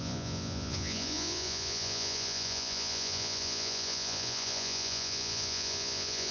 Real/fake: fake